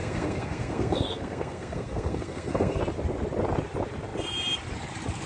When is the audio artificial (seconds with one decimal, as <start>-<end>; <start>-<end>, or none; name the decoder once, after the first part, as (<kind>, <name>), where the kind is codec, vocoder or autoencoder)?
0.0-2.8 (codec, SNAC)